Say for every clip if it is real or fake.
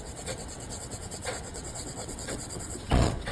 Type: fake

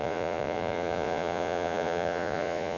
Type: fake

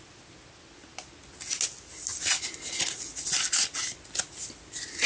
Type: real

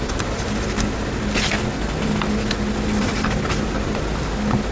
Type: real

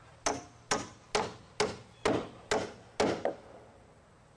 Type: real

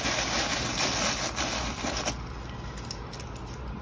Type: real